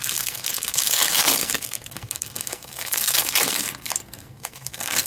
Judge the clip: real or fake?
fake